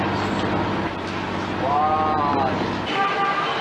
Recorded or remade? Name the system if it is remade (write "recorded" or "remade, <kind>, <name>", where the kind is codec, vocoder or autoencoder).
recorded